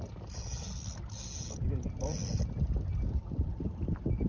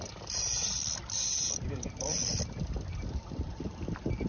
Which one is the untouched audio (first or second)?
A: first